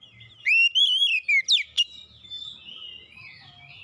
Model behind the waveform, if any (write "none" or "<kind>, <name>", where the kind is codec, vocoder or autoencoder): none